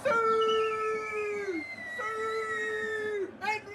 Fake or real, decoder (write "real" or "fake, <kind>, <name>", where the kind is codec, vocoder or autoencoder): real